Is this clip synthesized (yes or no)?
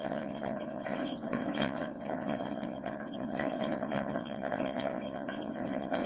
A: yes